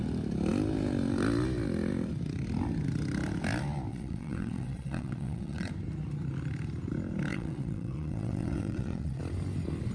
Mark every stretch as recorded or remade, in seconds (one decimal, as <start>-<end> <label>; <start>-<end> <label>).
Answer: 0.0-3.9 recorded; 3.9-5.7 remade; 5.7-7.3 recorded; 7.3-9.2 remade; 9.2-9.9 recorded